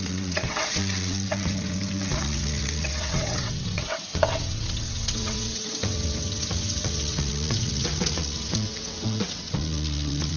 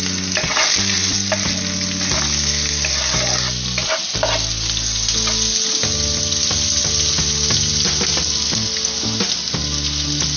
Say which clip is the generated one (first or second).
first